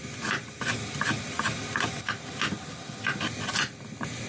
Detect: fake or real real